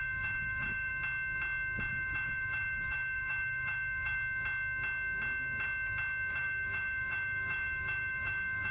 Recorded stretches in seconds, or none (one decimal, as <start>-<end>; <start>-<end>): 0.9-1.9; 4.2-6.3